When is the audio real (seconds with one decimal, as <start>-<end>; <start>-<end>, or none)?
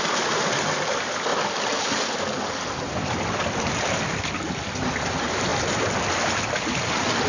0.0-7.3